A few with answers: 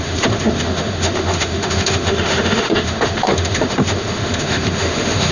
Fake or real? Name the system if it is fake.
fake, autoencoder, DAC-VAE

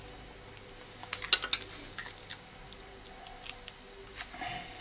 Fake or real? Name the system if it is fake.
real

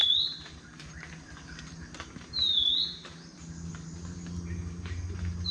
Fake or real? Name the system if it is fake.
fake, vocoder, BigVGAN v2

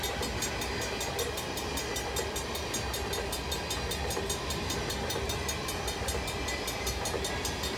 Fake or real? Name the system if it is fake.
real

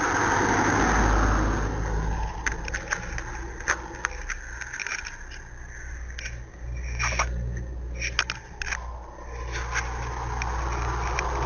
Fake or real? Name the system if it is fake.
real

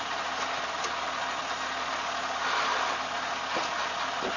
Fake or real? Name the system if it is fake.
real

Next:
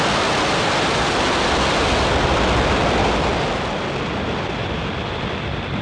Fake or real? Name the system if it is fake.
real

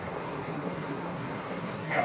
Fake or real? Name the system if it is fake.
fake, codec, SNAC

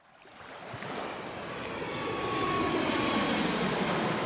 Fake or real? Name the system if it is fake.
real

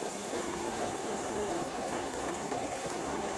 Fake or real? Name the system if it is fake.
fake, codec, SNAC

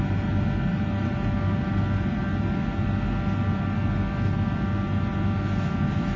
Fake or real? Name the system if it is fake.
real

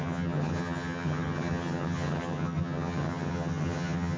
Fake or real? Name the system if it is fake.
fake, vocoder, HiFi-GAN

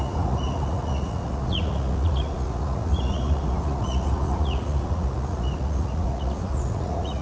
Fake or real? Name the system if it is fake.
fake, vocoder, Vocos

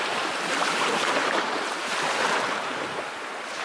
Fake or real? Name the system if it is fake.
fake, vocoder, BigVGAN v2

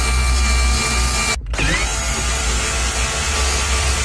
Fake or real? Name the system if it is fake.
real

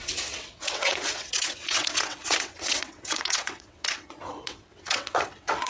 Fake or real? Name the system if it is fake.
fake, vocoder, WaveNeXt